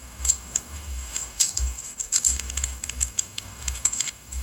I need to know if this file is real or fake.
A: fake